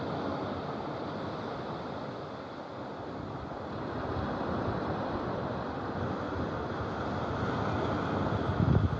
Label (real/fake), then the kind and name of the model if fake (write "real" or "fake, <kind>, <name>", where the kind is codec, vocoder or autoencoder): real